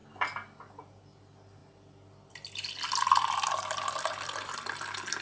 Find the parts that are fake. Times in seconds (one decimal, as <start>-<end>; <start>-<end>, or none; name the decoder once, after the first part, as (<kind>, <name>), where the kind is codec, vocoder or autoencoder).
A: 2.9-4.6 (vocoder, BigVGAN v2)